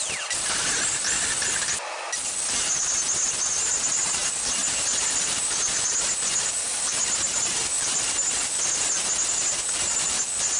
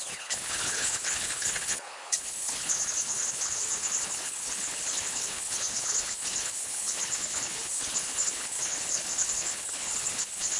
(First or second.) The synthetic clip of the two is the second